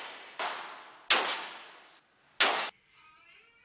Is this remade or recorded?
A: recorded